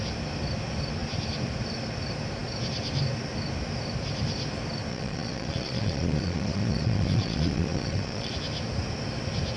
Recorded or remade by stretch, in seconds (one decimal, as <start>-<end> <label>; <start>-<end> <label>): 0.0-4.9 recorded; 4.9-8.3 remade; 8.3-9.6 recorded